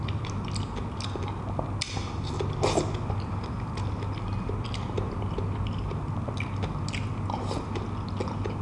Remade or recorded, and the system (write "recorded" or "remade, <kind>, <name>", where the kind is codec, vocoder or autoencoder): recorded